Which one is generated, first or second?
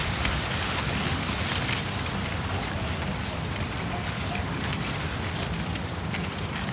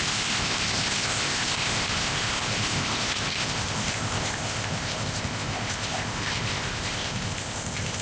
second